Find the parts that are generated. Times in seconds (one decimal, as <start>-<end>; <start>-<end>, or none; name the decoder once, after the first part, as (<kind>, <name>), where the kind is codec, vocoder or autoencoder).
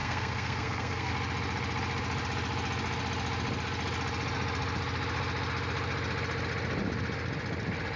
0.0-1.1 (codec, SNAC)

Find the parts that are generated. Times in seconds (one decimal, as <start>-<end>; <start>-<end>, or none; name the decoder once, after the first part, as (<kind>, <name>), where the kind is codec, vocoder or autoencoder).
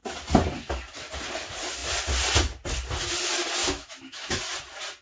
3.6-4.4 (autoencoder, DAC-VAE)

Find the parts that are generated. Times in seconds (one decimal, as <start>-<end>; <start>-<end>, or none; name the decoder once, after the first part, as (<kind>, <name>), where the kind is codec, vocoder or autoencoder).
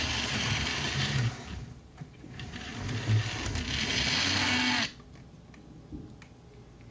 0.0-2.7 (vocoder, BigVGAN v2)